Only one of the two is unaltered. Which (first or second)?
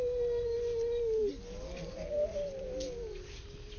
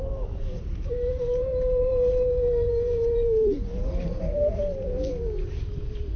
first